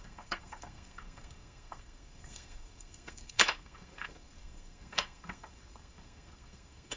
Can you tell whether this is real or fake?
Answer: fake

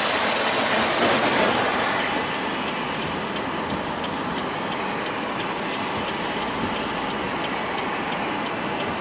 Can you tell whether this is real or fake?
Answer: real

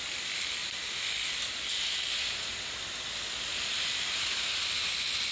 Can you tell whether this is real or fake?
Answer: real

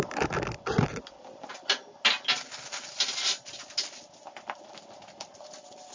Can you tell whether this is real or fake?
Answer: real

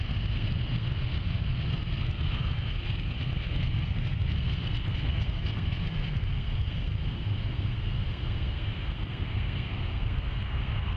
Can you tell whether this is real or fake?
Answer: fake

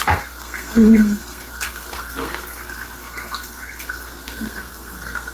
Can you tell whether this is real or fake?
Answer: fake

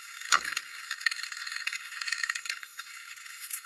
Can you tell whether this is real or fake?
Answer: fake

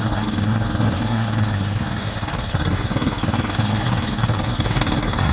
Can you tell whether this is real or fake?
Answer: fake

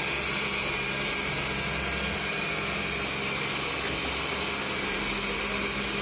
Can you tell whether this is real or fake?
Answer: real